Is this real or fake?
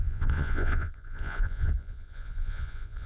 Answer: fake